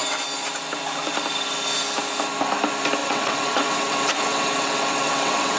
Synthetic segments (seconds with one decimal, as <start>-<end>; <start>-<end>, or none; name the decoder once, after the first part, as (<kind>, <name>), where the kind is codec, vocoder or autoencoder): 3.0-5.6 (vocoder, WaveNeXt)